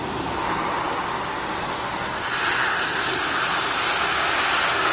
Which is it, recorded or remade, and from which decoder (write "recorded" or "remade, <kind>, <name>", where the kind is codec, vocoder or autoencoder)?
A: recorded